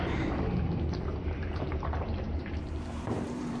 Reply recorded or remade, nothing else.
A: remade